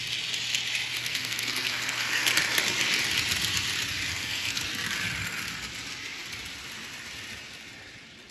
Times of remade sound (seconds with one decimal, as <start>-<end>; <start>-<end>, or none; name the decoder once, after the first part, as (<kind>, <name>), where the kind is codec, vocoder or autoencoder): 1.0-2.3 (codec, SNAC); 4.1-4.6